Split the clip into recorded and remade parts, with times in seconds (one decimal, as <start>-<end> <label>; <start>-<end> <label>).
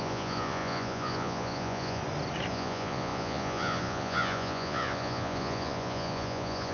0.0-2.0 remade; 2.0-2.5 recorded; 2.5-6.7 remade